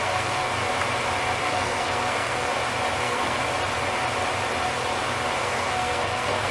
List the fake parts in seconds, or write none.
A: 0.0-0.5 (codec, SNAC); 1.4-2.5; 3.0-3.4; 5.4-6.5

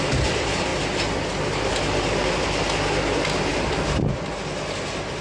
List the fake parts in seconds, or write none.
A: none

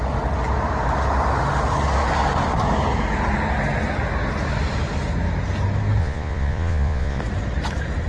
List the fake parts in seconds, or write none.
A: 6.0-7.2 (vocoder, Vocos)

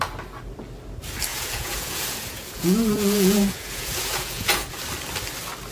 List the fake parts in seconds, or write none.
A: 1.3-4.7 (vocoder, Vocos)

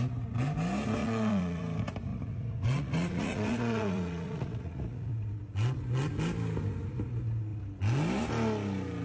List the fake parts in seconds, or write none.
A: 1.0-1.6 (vocoder, Vocos); 2.1-5.1

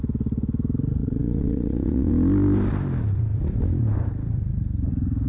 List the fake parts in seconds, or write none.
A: 1.0-2.1 (vocoder, WaveNeXt)

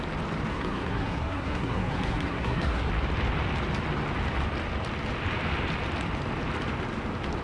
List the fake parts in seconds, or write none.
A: 0.5-2.9 (codec, SNAC)